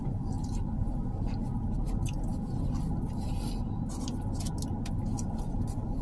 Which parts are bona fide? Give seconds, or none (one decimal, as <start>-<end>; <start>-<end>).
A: 0.0-6.0